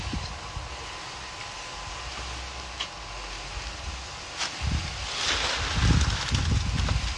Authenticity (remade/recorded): recorded